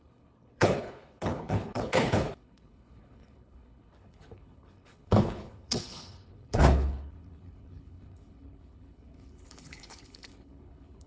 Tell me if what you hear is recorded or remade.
remade